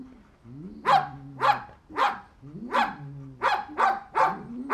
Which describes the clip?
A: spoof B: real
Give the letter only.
B